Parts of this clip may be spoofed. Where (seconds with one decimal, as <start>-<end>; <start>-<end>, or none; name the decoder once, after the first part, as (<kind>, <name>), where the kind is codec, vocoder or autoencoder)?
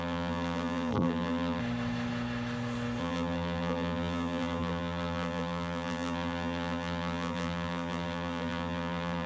0.0-1.6 (vocoder, BigVGAN v2); 3.0-9.3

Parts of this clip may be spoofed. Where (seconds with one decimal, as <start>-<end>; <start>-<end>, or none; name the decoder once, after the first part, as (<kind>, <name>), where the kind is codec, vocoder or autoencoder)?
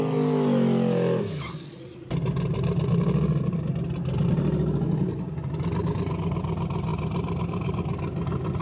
5.8-6.4 (vocoder, BigVGAN v2); 6.9-7.8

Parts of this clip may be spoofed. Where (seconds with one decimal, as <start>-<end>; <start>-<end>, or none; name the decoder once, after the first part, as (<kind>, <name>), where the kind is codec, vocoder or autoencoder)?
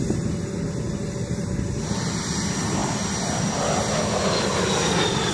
none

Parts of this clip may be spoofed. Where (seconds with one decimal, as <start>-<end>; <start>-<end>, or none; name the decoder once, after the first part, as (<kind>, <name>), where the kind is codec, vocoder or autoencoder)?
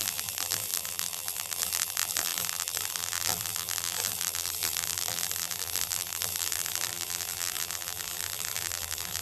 0.0-9.2 (vocoder, BigVGAN v2)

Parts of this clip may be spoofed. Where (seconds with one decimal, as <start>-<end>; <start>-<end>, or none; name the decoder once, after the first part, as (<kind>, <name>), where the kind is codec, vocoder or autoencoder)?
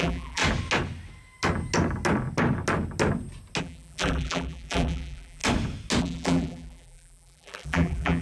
0.0-0.4 (vocoder, BigVGAN v2); 3.6-5.4; 6.0-8.2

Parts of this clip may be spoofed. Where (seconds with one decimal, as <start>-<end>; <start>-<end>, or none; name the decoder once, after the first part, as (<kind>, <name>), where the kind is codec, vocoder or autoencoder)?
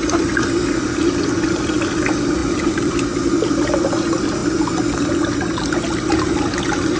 2.4-2.9 (vocoder, BigVGAN v2)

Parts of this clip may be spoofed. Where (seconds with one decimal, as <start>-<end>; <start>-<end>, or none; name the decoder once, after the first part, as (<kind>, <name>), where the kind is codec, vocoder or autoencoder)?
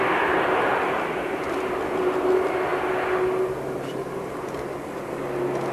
none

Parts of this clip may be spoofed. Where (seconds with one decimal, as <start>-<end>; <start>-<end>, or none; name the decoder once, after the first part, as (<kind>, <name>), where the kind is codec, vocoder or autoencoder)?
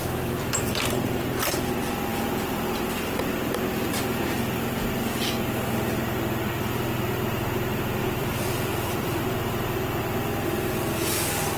0.0-1.7 (vocoder, BigVGAN v2); 8.0-10.0